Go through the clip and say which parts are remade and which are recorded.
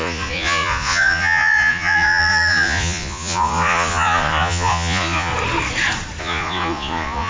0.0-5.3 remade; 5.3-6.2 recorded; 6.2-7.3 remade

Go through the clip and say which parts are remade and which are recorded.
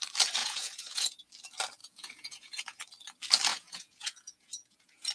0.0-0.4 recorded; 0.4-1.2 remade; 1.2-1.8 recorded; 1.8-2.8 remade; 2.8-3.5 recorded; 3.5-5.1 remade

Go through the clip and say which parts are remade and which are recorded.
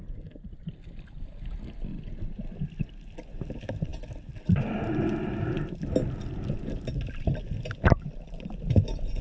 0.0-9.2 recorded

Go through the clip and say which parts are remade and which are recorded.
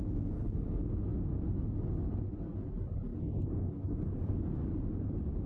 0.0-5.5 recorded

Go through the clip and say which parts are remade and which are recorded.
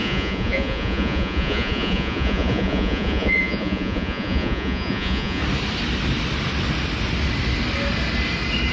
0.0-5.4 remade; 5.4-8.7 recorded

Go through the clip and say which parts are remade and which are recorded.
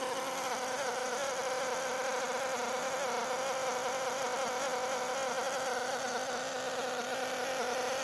0.0-8.0 recorded